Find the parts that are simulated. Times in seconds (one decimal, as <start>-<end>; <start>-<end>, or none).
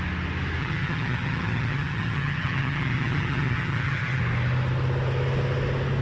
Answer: 0.6-4.2